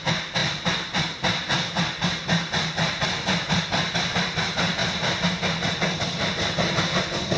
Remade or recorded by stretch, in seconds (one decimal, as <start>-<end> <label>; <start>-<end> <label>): 0.0-7.4 recorded